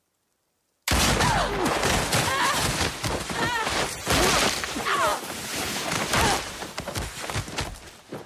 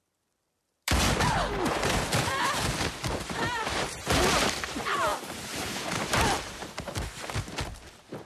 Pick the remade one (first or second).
second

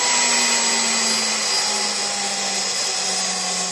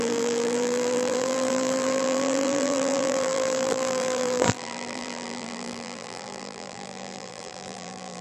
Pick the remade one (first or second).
second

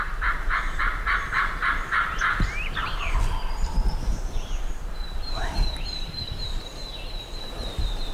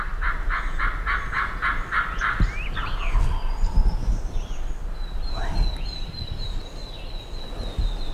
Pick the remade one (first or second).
first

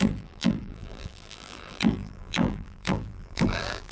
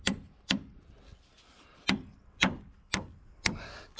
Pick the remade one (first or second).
first